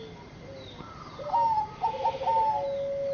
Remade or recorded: recorded